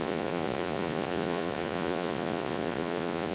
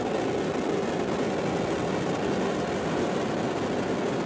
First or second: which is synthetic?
first